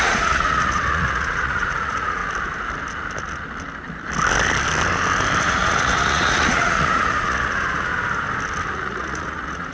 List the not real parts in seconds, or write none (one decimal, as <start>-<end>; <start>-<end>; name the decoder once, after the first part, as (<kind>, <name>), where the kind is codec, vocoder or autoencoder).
0.0-2.2 (vocoder, Vocos); 5.4-7.9; 8.7-9.7